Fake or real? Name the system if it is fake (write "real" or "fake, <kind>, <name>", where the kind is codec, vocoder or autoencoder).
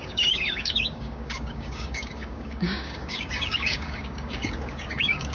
fake, codec, DAC